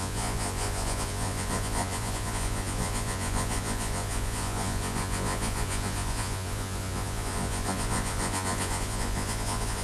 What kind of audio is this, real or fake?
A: fake